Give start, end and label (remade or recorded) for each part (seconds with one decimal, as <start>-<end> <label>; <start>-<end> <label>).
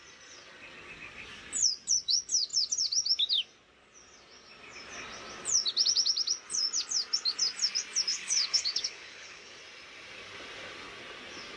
0.0-8.1 recorded; 8.1-9.6 remade; 9.6-11.6 recorded